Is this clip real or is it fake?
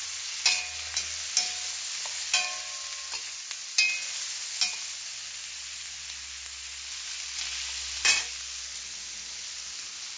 real